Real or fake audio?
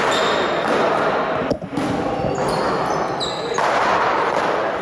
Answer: real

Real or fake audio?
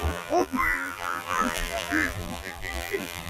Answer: fake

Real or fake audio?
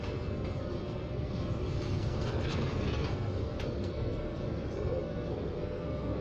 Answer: fake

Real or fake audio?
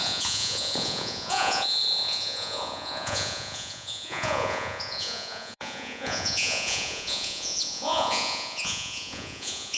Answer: fake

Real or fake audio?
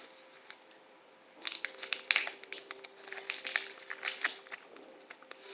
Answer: real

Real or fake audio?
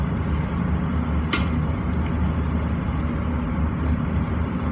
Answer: real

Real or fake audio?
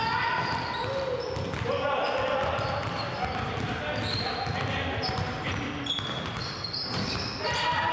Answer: real